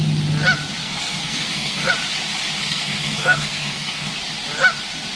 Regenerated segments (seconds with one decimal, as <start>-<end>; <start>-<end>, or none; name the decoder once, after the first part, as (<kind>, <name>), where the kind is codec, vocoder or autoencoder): 0.8-1.9 (codec, SNAC); 2.6-4.1